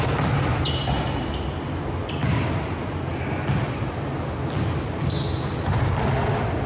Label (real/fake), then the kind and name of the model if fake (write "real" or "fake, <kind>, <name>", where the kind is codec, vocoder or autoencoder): real